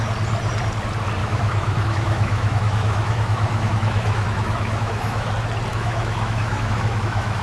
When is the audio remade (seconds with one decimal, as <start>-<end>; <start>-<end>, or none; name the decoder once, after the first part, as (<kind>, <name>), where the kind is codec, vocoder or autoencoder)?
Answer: 1.2-5.3 (autoencoder, DAC-VAE); 5.7-7.4